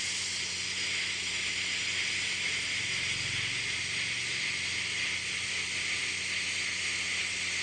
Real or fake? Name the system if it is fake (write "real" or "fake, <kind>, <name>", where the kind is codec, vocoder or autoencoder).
real